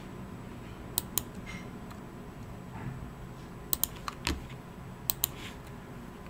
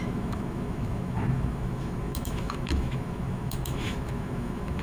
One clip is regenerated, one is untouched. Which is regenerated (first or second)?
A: second